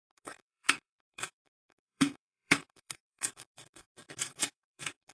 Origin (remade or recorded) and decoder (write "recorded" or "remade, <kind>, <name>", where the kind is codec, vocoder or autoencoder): remade, codec, SNAC